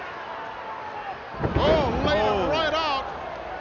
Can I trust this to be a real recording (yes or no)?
yes